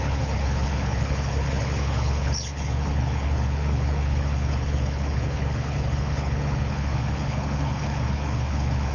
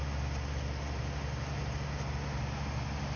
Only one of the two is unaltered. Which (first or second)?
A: second